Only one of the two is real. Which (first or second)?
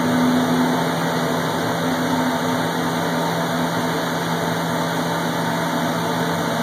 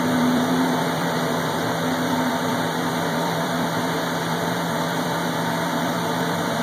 first